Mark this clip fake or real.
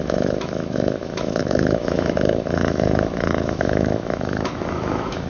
fake